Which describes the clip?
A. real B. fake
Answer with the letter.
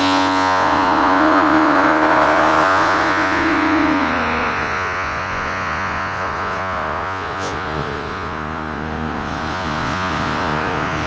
B